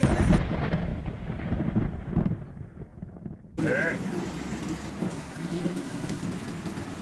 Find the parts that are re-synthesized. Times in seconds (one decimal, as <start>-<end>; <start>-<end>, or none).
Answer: 5.1-6.2